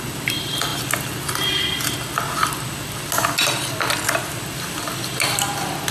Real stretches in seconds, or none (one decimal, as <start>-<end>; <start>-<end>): 0.0-5.9